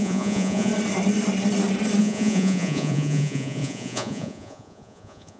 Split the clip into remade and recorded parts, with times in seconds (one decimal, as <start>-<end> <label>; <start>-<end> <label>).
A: 0.0-0.7 remade; 0.7-2.0 recorded; 2.0-5.4 remade